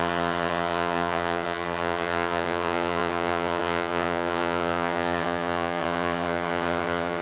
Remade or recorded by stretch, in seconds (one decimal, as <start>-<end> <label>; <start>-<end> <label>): 0.0-7.2 remade